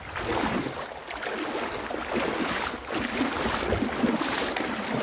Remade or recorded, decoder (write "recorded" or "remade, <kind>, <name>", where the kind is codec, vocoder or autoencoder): recorded